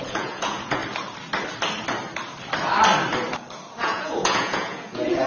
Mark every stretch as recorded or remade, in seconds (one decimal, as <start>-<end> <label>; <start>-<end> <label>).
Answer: 0.0-0.8 remade; 0.8-3.8 recorded; 3.8-5.3 remade